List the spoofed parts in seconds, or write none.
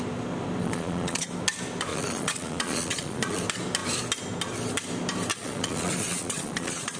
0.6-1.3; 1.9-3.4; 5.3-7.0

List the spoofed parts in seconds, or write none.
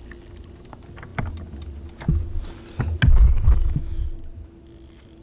none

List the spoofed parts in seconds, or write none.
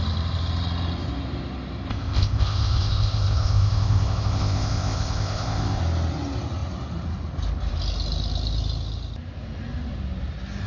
1.9-5.8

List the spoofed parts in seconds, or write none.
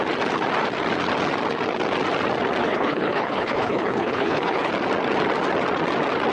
2.6-4.7